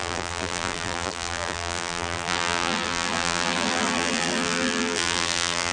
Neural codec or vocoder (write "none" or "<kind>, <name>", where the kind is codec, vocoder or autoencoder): vocoder, BigVGAN v2